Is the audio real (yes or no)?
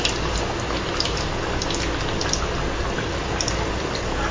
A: yes